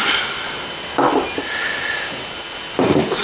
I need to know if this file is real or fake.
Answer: real